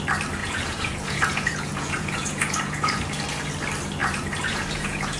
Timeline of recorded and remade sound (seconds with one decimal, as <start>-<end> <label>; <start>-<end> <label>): 0.0-0.4 recorded; 0.4-3.0 remade; 3.0-4.0 recorded; 4.0-5.2 remade